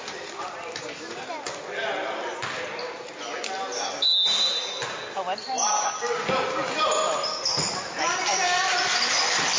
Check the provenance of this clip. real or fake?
real